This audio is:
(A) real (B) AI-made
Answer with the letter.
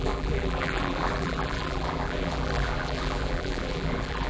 B